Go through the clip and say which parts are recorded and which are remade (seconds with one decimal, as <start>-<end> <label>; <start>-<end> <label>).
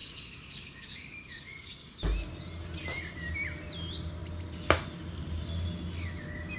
0.0-2.0 remade; 2.0-6.6 recorded